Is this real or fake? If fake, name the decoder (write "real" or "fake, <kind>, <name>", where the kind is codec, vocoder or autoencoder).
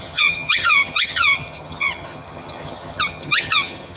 fake, vocoder, HiFi-GAN